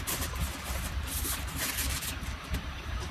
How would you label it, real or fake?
fake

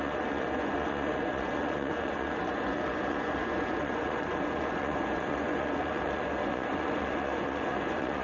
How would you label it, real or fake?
fake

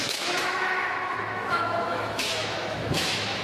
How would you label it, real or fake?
fake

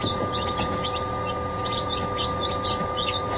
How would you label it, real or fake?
fake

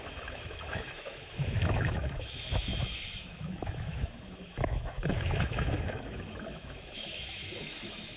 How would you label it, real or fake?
fake